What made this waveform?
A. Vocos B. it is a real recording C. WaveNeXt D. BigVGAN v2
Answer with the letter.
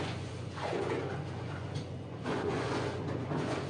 A